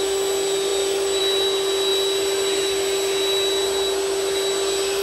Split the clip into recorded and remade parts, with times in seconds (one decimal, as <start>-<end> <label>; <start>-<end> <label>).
0.0-5.0 recorded